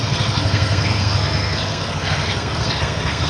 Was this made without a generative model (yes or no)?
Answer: no